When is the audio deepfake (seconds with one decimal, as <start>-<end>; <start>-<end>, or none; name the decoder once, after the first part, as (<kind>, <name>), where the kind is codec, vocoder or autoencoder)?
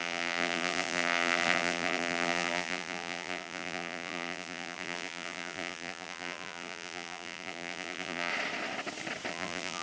0.0-8.3 (vocoder, BigVGAN v2); 9.3-9.8